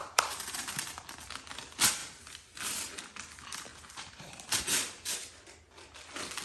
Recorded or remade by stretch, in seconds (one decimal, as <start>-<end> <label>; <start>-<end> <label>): 0.0-1.0 remade; 1.0-3.7 recorded; 3.7-4.5 remade; 4.5-6.4 recorded